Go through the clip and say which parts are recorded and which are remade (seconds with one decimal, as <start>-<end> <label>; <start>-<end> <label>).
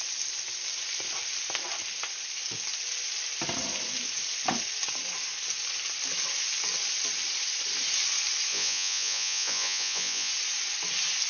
0.0-8.5 recorded; 8.5-10.3 remade; 10.3-11.3 recorded